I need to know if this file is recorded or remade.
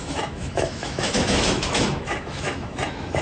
remade